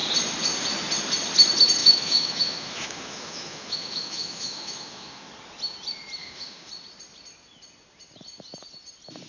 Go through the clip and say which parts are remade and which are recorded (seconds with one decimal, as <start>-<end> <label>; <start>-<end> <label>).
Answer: 0.0-1.8 recorded; 1.8-5.3 remade; 5.3-6.2 recorded; 6.2-6.7 remade; 6.7-9.3 recorded